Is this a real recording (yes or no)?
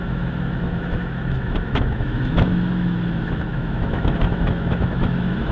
no